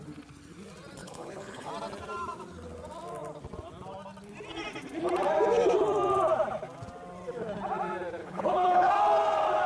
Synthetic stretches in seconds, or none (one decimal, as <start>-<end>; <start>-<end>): 1.0-1.7; 8.2-8.9